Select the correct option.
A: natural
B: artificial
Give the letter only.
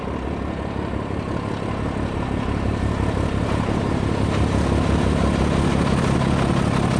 A